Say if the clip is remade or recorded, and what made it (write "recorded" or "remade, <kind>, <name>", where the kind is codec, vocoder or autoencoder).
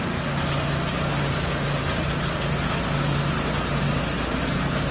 recorded